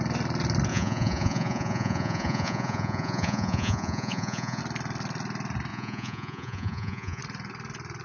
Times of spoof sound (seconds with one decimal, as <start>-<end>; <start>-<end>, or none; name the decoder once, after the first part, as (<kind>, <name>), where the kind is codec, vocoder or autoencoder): 0.7-4.6 (vocoder, Vocos); 5.7-7.2